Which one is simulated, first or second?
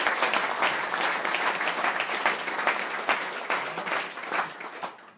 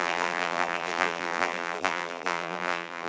second